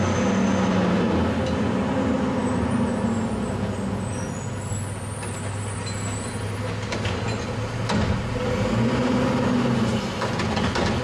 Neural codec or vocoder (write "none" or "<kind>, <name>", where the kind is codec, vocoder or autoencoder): none